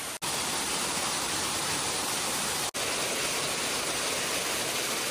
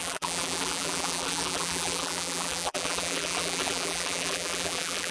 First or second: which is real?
first